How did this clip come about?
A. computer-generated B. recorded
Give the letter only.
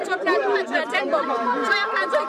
B